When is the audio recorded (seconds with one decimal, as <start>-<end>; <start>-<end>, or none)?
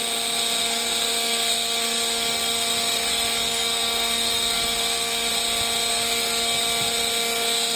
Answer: 0.0-0.6; 5.3-5.9; 6.6-7.8